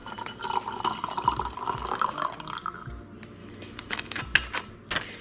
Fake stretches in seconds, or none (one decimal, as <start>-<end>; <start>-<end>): 3.4-4.2